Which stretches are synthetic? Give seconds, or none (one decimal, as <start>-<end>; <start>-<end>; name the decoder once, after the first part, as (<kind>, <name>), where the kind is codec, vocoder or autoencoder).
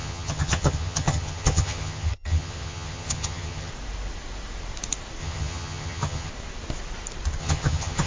0.0-3.7 (vocoder, HiFi-GAN); 5.2-6.3; 7.4-8.1